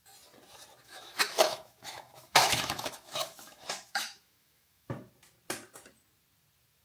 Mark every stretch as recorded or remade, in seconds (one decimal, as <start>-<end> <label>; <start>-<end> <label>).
0.0-0.8 recorded; 0.8-4.9 remade; 4.9-6.8 recorded